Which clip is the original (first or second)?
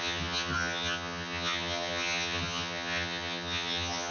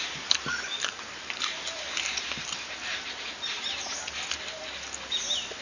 second